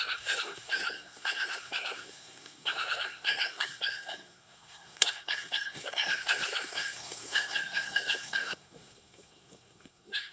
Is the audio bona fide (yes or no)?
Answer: no